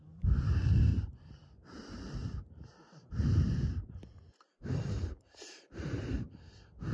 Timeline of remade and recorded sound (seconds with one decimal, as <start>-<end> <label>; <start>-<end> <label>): 0.0-0.9 recorded; 0.9-1.5 remade; 1.5-2.2 recorded; 2.2-6.3 remade; 6.3-6.9 recorded